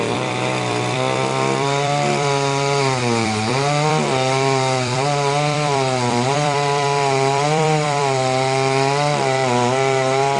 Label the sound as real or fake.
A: fake